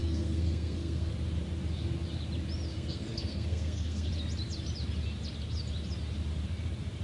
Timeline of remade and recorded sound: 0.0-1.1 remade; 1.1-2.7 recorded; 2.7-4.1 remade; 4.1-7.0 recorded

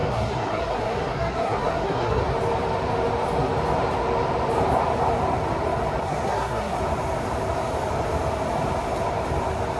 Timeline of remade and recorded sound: 0.0-2.2 remade; 2.2-6.0 recorded; 6.0-6.8 remade; 6.8-9.8 recorded

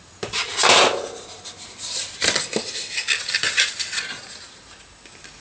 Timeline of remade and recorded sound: 0.0-5.4 recorded

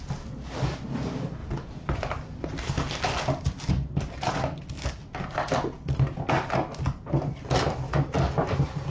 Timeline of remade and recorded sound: 0.0-8.9 recorded

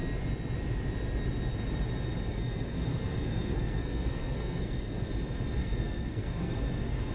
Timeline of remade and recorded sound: 0.0-2.3 recorded; 2.3-5.1 remade; 5.1-5.6 recorded; 5.6-7.1 remade

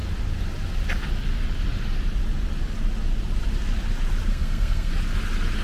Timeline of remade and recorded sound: 0.0-4.3 recorded; 4.3-4.9 remade; 4.9-5.6 recorded